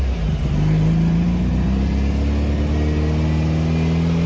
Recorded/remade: recorded